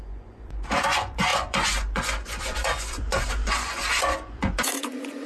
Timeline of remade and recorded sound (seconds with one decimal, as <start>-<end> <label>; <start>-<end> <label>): 0.0-5.3 remade